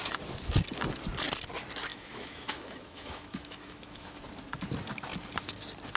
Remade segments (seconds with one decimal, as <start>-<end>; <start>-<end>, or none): 1.9-4.2